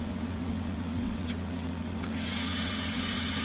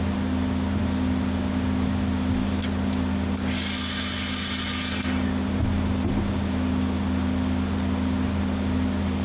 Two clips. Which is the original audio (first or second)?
second